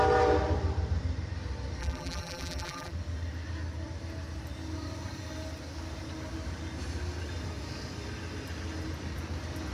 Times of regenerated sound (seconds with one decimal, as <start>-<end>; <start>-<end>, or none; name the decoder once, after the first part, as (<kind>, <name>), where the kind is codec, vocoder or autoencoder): 1.8-2.9 (vocoder, BigVGAN v2)